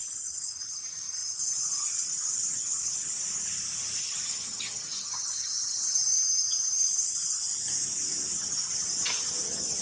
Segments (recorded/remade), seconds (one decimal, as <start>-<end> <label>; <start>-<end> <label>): 0.0-3.2 remade; 3.2-4.0 recorded; 4.0-7.5 remade; 7.5-8.3 recorded; 8.3-9.8 remade